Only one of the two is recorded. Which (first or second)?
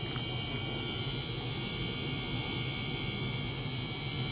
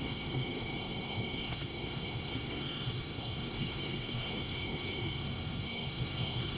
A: first